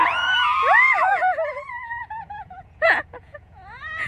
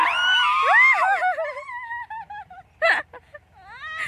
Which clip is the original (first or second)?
second